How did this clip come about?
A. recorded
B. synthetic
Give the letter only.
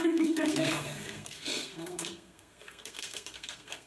B